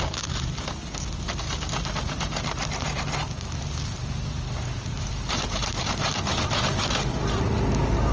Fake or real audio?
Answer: real